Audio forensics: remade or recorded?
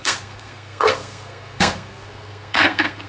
remade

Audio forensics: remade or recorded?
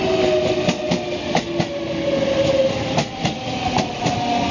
recorded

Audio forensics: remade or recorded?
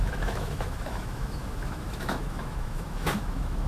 remade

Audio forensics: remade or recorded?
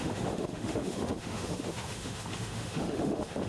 remade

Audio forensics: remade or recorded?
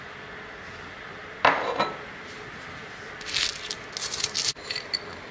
recorded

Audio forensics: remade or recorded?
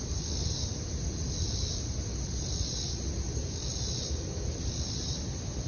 recorded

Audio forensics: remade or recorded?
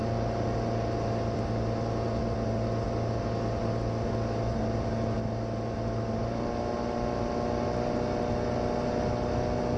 recorded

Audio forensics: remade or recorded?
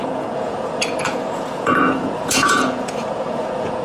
remade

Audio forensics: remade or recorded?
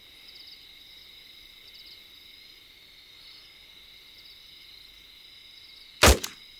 recorded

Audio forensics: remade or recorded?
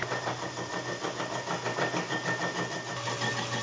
recorded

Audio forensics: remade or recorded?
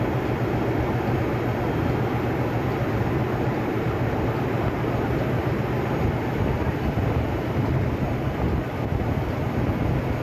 recorded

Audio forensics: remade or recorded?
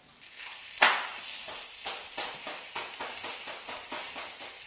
recorded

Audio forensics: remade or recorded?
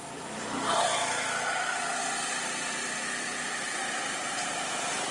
recorded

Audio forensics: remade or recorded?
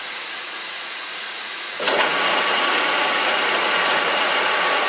remade